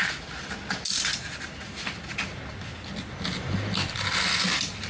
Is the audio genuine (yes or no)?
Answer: yes